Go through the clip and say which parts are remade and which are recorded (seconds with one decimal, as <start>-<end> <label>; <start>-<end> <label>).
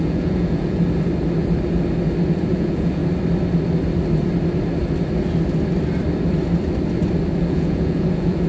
0.0-0.8 remade; 0.8-2.5 recorded; 2.5-3.0 remade; 3.0-7.4 recorded; 7.4-8.5 remade